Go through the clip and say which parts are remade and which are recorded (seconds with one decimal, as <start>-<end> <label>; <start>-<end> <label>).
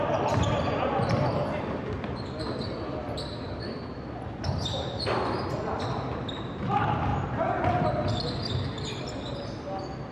0.0-10.1 recorded